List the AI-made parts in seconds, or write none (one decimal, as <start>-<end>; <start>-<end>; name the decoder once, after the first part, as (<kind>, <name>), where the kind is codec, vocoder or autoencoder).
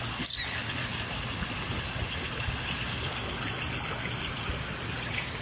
none